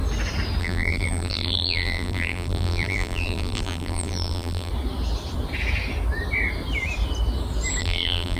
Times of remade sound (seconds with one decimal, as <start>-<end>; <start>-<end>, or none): 0.6-4.7; 7.8-8.4

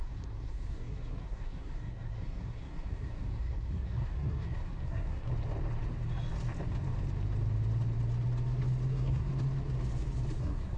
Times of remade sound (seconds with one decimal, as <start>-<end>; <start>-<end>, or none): 0.0-5.3; 8.9-9.3; 10.4-10.8

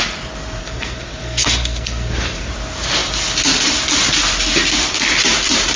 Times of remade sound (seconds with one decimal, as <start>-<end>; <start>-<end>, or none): 0.6-2.5

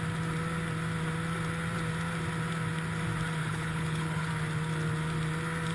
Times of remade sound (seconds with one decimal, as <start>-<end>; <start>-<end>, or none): 3.4-4.3

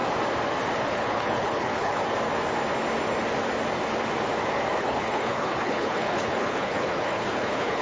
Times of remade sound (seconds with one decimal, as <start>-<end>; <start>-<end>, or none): 0.9-2.0; 4.8-7.8

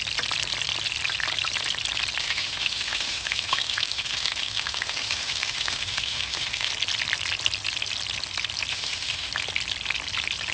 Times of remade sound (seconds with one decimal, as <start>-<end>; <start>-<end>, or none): 2.2-6.7; 8.7-9.3